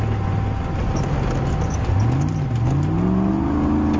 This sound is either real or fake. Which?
real